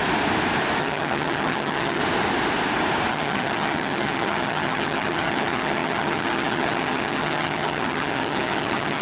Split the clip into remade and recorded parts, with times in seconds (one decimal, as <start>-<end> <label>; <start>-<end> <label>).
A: 0.0-0.8 recorded; 0.8-2.0 remade; 2.0-3.1 recorded; 3.1-9.0 remade